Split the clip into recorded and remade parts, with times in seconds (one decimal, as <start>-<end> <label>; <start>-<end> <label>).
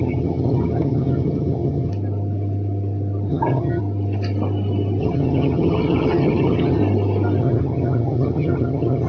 0.0-1.9 remade; 1.9-3.3 recorded; 3.3-3.8 remade; 3.8-5.0 recorded; 5.0-6.8 remade; 6.8-7.4 recorded; 7.4-9.1 remade